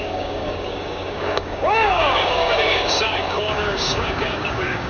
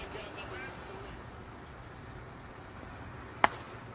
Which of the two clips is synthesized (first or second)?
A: first